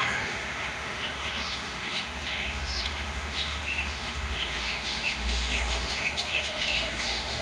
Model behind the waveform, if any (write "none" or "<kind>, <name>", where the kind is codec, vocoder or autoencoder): autoencoder, DAC-VAE